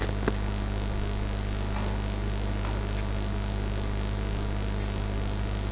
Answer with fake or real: real